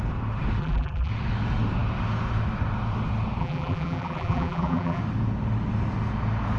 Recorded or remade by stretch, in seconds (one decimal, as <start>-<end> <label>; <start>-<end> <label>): 0.0-0.6 recorded; 0.6-1.1 remade; 1.1-3.4 recorded; 3.4-5.0 remade; 5.0-6.6 recorded